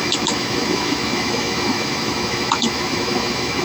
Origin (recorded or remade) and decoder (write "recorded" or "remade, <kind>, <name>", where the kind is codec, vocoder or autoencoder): remade, autoencoder, DAC-VAE